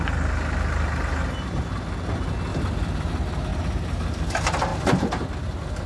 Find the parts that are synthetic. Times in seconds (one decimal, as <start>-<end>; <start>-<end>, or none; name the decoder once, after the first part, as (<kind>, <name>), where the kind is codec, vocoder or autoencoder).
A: 2.5-3.1 (vocoder, BigVGAN v2)